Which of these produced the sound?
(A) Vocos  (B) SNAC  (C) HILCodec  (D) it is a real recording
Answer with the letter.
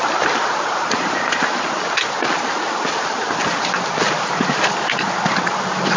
D